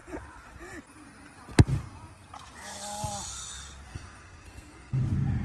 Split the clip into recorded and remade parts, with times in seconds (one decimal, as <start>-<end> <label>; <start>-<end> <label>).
0.0-3.9 recorded; 3.9-5.0 remade; 5.0-5.4 recorded